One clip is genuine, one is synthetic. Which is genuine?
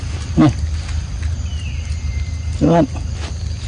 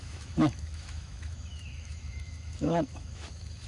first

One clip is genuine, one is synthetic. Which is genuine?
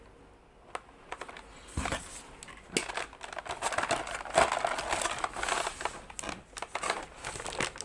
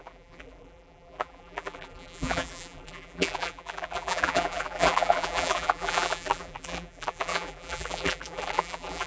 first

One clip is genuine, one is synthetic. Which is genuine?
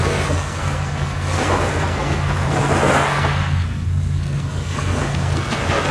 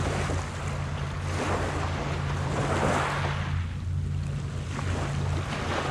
second